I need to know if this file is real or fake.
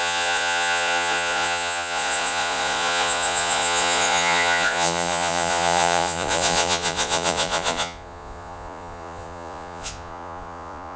fake